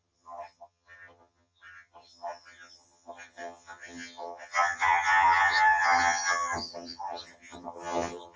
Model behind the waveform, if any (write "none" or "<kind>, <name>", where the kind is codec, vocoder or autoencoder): vocoder, HiFi-GAN